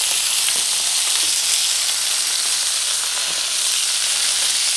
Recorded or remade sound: recorded